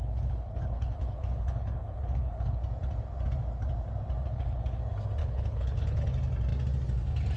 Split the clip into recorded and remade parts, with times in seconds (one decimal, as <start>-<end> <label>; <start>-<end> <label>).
0.0-2.6 remade; 2.6-4.2 recorded; 4.2-4.8 remade; 4.8-5.2 recorded; 5.2-6.1 remade; 6.1-7.4 recorded